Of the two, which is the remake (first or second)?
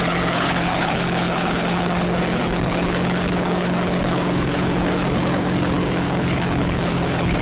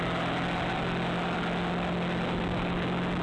first